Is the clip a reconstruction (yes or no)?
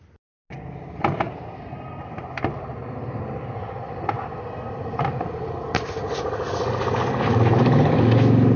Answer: no